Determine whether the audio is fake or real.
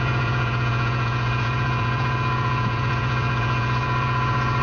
fake